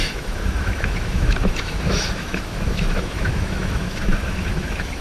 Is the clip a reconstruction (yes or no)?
yes